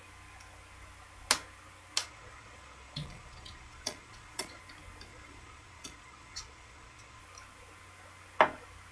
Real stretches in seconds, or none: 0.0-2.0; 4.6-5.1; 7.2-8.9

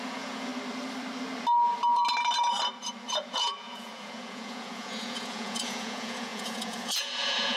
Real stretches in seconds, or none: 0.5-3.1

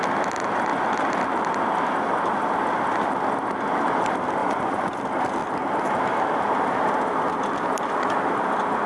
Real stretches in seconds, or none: 0.0-4.4; 5.0-8.9

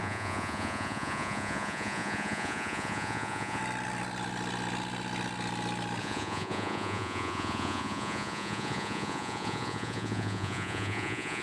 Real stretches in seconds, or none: 3.6-6.0